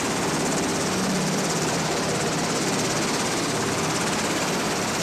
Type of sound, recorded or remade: recorded